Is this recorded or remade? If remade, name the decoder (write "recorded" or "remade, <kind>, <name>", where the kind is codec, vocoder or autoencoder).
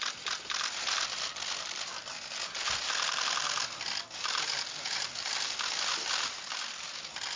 recorded